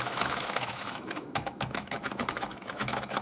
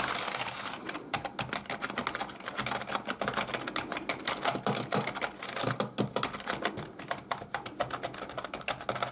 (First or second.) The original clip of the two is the second